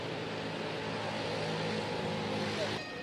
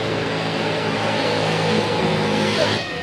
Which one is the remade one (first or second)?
second